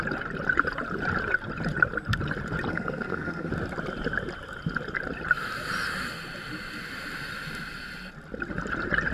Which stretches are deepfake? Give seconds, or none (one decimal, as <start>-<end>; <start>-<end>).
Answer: 2.7-3.5